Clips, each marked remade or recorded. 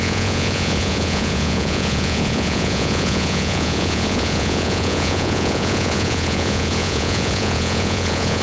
remade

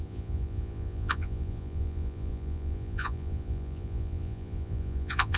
remade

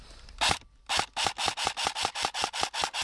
recorded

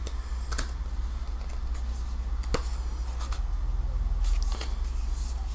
recorded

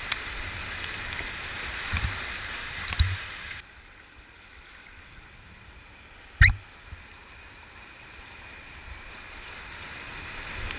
recorded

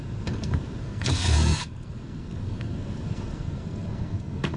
remade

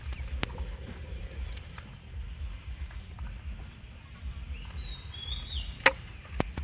recorded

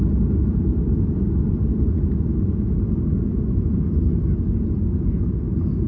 recorded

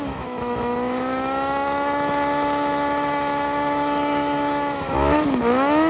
remade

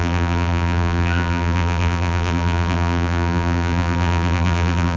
remade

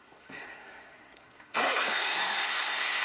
remade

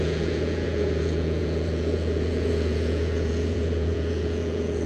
remade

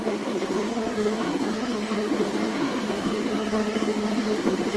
remade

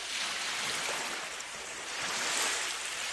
recorded